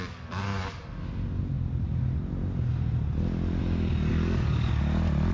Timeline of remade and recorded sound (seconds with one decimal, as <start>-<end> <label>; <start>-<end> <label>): 0.0-4.1 recorded; 4.1-4.7 remade; 4.7-5.3 recorded